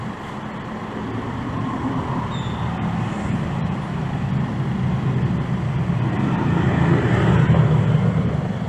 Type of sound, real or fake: real